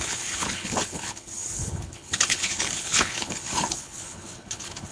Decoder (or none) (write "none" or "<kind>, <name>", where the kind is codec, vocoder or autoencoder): codec, HILCodec